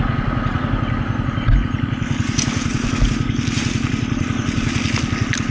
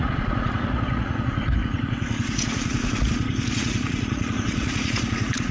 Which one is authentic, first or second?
first